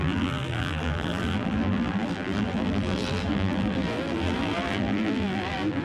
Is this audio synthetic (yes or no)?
yes